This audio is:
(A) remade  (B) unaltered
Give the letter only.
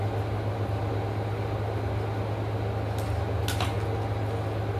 B